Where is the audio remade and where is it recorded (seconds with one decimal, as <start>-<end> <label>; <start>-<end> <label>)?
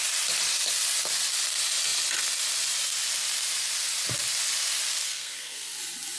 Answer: 0.0-5.0 recorded; 5.0-5.8 remade; 5.8-6.2 recorded